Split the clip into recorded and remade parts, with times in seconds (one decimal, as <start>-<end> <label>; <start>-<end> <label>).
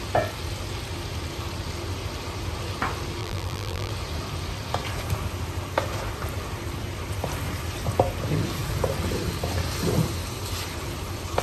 0.0-3.2 recorded; 3.2-3.9 remade; 3.9-11.4 recorded